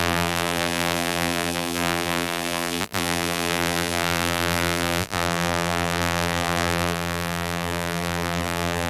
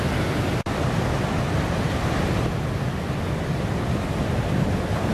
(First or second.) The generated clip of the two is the first